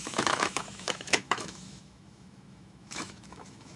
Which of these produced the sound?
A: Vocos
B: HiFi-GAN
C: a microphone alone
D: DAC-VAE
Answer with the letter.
D